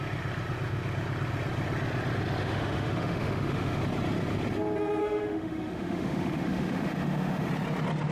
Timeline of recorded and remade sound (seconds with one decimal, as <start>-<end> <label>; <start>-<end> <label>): 0.0-2.4 recorded; 2.4-3.8 remade; 3.8-5.0 recorded; 5.0-7.5 remade; 7.5-8.1 recorded